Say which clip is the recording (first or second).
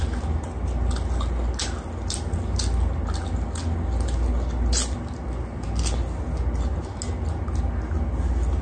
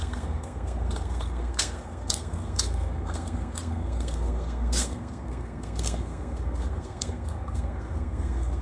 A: first